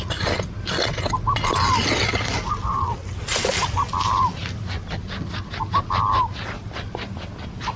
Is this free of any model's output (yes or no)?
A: yes